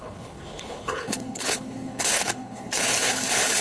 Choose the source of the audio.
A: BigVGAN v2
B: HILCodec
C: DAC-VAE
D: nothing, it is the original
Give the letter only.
B